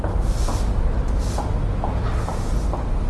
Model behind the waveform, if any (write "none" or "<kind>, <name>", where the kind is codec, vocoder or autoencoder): none